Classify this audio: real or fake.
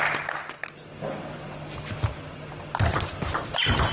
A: real